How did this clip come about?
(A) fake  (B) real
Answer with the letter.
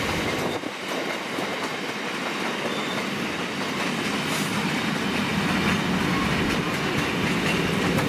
B